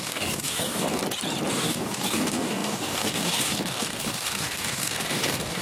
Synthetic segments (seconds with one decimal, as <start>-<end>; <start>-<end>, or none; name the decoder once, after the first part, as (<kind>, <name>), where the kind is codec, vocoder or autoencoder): 0.0-1.0 (codec, DAC); 1.5-5.6